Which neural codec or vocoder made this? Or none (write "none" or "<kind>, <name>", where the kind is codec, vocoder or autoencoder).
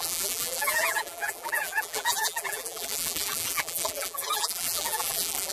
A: vocoder, BigVGAN v2